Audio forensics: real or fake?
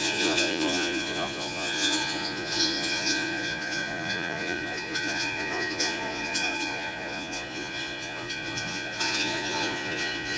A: fake